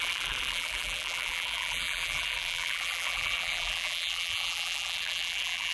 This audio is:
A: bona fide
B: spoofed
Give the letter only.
B